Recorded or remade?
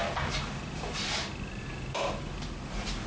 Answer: recorded